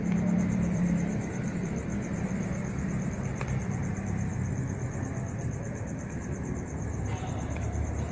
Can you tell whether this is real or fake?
fake